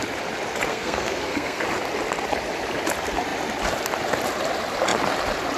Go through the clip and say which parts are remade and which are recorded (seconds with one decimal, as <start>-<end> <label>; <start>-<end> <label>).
0.0-0.7 recorded; 0.7-1.6 remade; 1.6-5.6 recorded